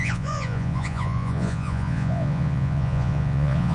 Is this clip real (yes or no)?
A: no